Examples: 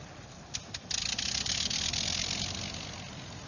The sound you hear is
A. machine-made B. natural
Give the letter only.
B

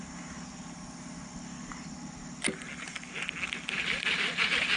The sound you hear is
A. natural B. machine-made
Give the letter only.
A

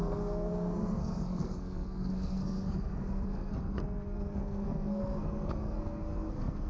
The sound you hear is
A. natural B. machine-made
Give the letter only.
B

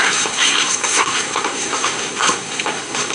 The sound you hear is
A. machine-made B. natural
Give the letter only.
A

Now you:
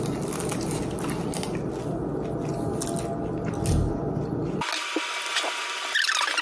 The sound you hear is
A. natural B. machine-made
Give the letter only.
A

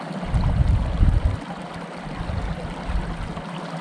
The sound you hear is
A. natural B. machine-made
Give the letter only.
A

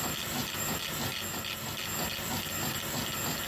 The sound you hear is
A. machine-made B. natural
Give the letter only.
B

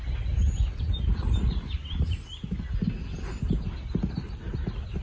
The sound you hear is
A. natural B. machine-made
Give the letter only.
A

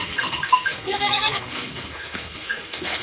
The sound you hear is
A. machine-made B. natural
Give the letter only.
A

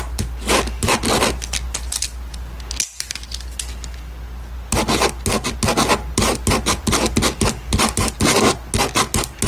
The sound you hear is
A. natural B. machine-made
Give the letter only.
A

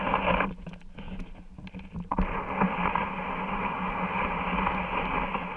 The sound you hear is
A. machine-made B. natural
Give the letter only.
B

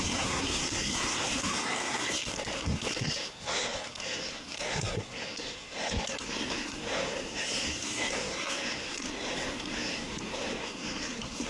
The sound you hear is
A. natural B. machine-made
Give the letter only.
B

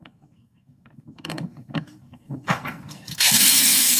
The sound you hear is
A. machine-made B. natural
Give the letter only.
A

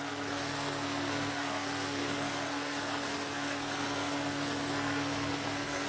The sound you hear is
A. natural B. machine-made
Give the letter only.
B